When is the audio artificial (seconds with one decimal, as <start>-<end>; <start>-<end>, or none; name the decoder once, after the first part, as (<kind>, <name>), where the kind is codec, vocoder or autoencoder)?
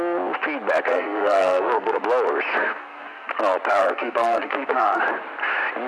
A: 0.9-2.0 (codec, SNAC); 2.5-3.3; 3.8-5.0